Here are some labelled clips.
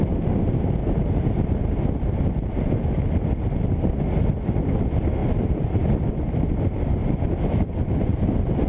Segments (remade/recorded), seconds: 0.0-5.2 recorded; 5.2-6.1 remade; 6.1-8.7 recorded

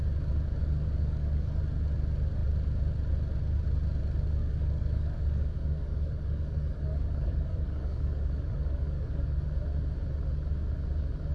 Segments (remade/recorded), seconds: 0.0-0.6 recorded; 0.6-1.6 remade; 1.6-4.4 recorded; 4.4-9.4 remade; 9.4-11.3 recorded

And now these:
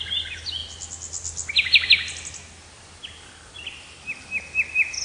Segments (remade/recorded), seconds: 0.0-5.0 recorded

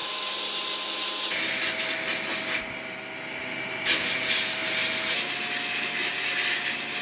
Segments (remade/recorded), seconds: 0.0-7.0 recorded

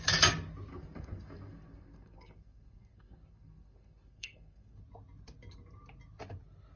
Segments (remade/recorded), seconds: 0.0-0.7 recorded; 0.7-4.8 remade; 4.8-6.8 recorded

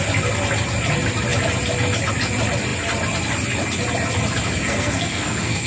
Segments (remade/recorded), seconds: 0.0-4.6 recorded; 4.6-5.7 remade

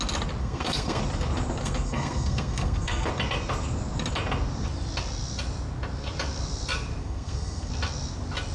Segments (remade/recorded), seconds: 0.0-0.4 recorded; 0.4-1.0 remade; 1.0-1.6 recorded; 1.6-3.1 remade; 3.1-7.0 recorded; 7.0-7.7 remade; 7.7-8.5 recorded